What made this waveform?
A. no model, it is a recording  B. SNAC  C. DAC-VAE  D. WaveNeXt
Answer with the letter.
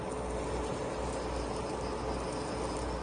A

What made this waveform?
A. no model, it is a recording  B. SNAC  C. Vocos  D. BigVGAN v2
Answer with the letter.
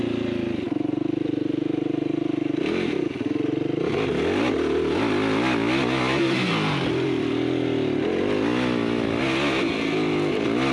A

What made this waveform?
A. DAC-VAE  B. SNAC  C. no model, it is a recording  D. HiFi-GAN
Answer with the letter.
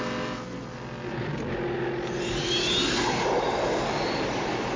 C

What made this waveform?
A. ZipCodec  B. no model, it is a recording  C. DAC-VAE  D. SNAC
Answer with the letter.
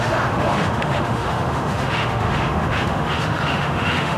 C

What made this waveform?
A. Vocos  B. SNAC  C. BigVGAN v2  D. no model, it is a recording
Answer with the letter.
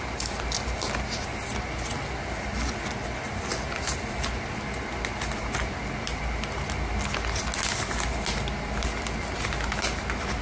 D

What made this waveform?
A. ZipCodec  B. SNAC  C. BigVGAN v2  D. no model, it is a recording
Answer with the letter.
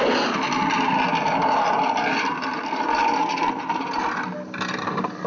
D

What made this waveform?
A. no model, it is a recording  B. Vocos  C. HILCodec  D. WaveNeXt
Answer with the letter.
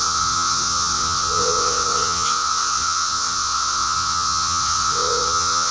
D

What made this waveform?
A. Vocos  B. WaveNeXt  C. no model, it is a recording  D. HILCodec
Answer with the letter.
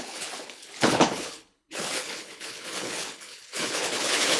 D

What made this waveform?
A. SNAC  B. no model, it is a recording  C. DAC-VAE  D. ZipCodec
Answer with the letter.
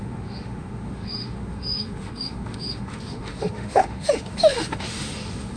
C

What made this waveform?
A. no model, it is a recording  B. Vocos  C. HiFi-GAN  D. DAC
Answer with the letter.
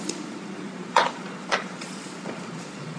B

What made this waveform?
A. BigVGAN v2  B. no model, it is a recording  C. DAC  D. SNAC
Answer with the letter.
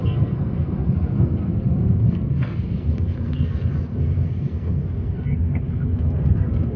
D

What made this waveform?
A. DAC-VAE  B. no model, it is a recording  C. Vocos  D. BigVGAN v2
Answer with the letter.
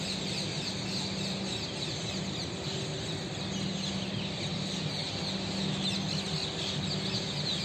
B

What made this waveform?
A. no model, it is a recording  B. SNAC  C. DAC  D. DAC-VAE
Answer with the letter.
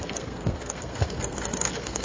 B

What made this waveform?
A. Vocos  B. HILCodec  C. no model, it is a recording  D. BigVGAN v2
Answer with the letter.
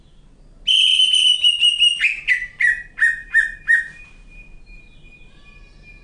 C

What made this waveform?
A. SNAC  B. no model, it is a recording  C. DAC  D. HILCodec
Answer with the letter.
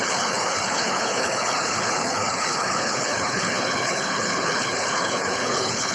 D